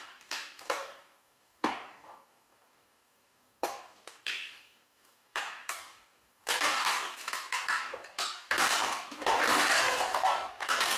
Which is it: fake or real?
fake